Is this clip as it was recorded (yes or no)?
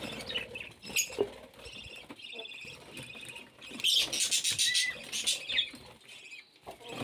yes